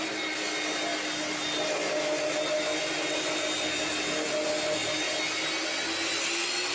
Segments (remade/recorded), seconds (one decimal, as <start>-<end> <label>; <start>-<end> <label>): 0.0-6.7 recorded